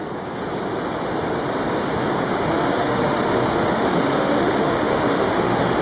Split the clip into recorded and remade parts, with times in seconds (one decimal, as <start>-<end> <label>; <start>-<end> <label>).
0.0-2.3 recorded; 2.3-5.8 remade